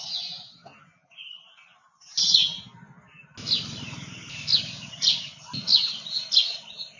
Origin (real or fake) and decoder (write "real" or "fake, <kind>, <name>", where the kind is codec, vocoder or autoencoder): real